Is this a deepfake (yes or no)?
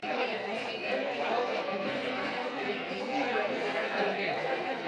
yes